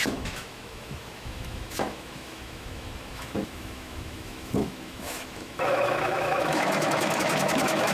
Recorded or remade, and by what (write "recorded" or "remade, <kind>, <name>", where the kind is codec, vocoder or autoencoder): remade, autoencoder, DAC-VAE